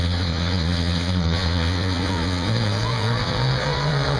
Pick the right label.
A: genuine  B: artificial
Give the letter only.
B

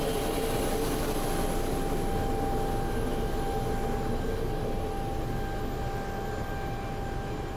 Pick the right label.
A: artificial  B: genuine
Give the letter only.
B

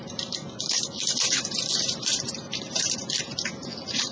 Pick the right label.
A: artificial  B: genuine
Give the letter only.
A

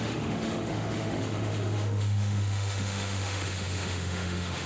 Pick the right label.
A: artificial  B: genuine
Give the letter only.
A